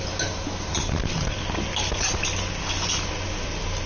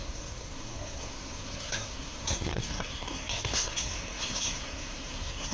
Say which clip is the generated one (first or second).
second